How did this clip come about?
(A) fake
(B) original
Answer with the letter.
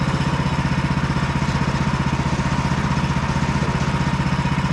B